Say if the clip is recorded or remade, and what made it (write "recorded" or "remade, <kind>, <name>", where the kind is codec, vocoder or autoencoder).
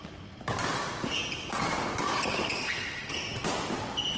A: recorded